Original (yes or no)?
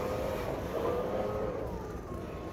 no